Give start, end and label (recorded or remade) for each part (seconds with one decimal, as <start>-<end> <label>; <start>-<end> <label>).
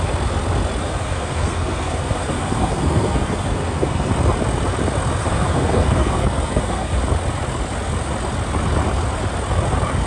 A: 0.0-0.8 recorded; 0.8-4.1 remade; 4.1-5.2 recorded; 5.2-7.0 remade; 7.0-10.1 recorded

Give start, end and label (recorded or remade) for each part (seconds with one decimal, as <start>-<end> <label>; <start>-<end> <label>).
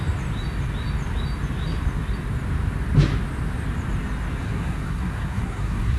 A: 0.0-4.4 recorded; 4.4-6.0 remade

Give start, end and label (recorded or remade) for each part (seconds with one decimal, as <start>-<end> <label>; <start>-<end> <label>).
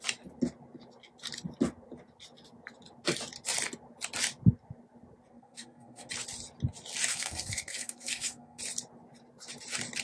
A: 0.0-5.3 recorded; 5.3-6.1 remade; 6.1-7.1 recorded; 7.1-8.6 remade; 8.6-10.0 recorded